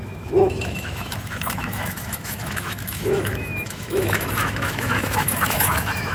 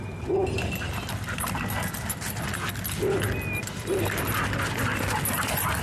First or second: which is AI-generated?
first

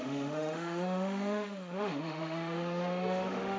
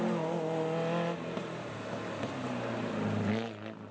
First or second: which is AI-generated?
first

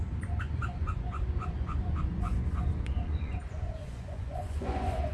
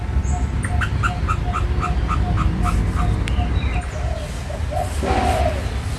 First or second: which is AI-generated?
first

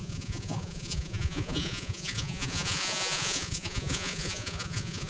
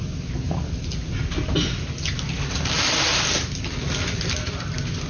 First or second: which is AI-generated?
first